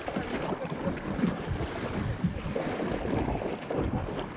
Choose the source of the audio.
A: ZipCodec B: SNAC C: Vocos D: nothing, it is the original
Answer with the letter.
D